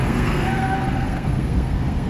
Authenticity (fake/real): fake